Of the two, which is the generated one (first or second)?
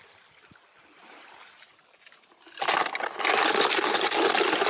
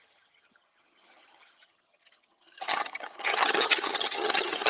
second